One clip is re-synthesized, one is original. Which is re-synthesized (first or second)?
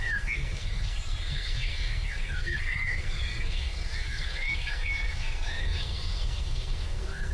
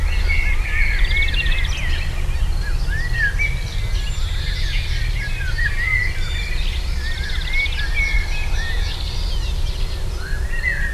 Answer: first